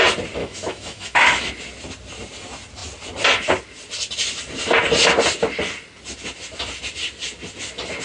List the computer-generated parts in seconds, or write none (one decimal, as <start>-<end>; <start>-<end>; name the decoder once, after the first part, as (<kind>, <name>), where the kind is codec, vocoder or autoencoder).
0.4-1.5 (autoencoder, DAC-VAE)